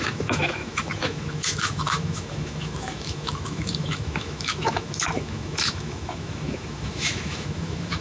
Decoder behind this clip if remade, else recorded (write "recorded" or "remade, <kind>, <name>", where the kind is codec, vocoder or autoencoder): remade, autoencoder, DAC-VAE